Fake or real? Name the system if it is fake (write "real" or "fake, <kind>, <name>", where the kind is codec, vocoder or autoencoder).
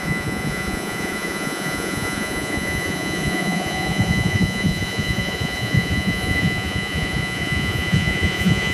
fake, vocoder, Vocos